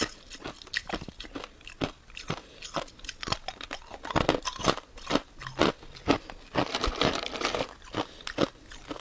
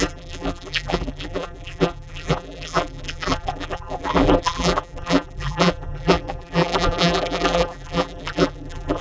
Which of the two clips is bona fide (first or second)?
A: first